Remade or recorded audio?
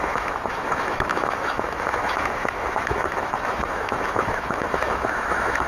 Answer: remade